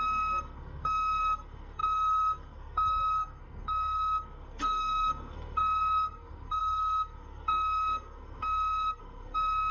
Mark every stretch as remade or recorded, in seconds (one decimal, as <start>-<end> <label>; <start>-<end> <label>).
0.0-9.7 remade